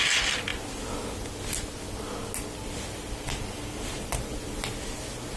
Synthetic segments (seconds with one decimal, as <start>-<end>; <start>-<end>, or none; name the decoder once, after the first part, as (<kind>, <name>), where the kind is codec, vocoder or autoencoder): none